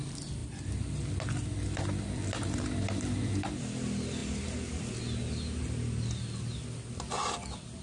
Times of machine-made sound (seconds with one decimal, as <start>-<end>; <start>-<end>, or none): 0.4-3.6; 4.2-4.8